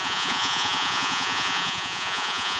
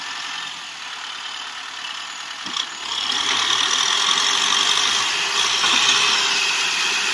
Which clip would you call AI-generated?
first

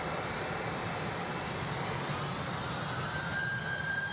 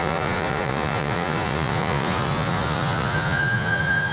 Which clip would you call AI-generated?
second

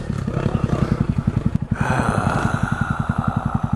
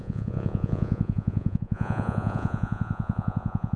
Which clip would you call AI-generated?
second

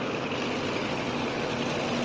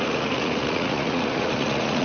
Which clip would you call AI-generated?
second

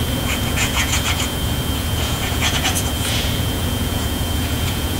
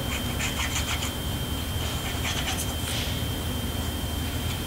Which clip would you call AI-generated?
first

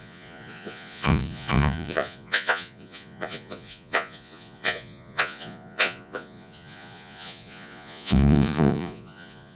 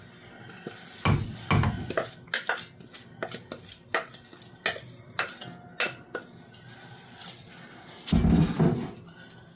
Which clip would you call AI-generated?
first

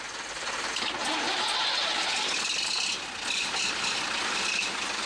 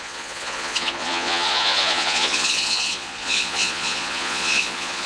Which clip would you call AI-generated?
second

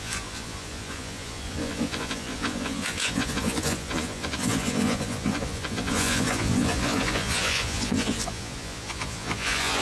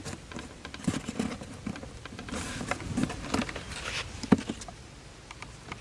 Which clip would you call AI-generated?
first